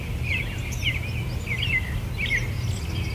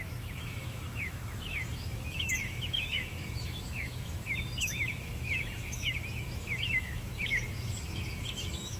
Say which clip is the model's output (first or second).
second